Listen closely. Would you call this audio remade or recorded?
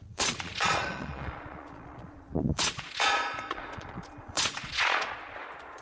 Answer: remade